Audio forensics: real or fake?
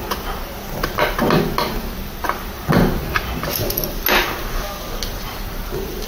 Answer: real